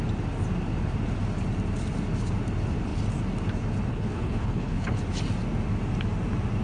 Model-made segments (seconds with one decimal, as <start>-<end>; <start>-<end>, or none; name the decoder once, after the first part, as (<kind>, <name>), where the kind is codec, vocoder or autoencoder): 3.9-5.0 (codec, HILCodec)